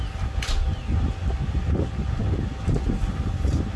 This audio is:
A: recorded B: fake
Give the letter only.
A